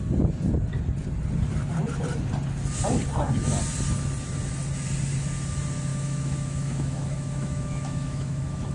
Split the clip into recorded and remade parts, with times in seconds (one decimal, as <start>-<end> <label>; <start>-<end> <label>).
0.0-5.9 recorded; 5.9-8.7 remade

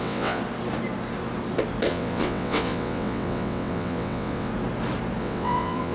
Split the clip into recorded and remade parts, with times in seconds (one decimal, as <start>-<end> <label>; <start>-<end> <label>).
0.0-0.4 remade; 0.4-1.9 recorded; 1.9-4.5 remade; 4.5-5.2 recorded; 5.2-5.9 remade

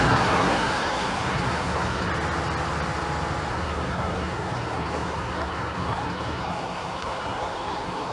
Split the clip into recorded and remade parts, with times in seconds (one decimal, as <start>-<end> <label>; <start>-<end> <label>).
0.0-2.1 remade; 2.1-3.5 recorded; 3.5-8.1 remade